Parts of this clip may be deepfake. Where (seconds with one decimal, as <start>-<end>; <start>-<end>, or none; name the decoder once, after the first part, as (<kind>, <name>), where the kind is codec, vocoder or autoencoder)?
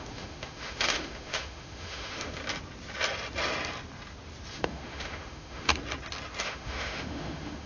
0.0-2.4 (autoencoder, DAC-VAE); 4.5-5.7; 6.4-7.7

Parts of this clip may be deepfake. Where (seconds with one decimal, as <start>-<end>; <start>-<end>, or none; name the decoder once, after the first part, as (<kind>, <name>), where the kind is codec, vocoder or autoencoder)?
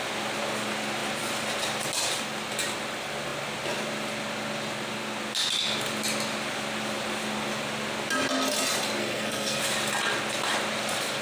9.0-9.6 (codec, SNAC)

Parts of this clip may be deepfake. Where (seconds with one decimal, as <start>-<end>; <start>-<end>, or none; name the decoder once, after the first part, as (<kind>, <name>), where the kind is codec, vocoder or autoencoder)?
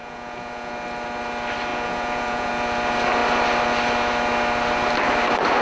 0.0-0.7 (vocoder, Vocos); 1.7-2.5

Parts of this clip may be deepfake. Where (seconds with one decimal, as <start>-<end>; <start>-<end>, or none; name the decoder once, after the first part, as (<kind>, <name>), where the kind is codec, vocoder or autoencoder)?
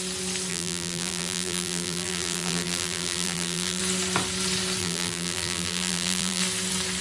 0.5-3.8 (vocoder, BigVGAN v2); 4.8-6.4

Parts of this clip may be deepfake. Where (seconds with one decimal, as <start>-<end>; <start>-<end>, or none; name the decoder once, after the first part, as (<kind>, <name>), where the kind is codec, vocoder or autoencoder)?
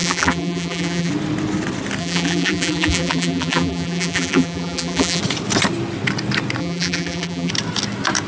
0.0-1.1 (vocoder, BigVGAN v2); 2.0-5.2; 6.6-7.5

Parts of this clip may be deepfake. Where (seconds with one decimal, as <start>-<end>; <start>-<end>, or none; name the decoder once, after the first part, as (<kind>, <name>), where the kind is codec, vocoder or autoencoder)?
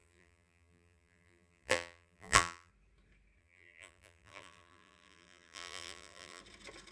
0.0-2.7 (vocoder, BigVGAN v2); 3.4-6.4